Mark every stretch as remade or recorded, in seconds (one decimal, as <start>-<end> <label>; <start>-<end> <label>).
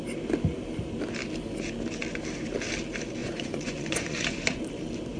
0.0-3.2 recorded; 3.2-4.6 remade; 4.6-5.2 recorded